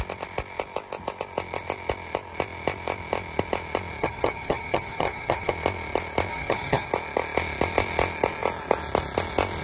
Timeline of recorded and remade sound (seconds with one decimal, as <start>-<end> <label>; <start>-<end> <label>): 0.0-4.0 recorded; 4.0-5.5 remade; 5.5-6.3 recorded; 6.3-6.9 remade; 6.9-9.6 recorded